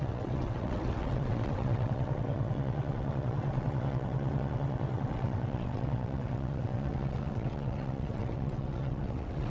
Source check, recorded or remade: remade